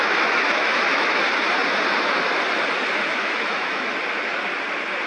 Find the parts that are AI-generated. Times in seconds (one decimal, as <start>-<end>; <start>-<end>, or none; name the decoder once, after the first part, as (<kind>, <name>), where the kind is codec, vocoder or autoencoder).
0.0-1.2 (autoencoder, DAC-VAE); 3.1-3.9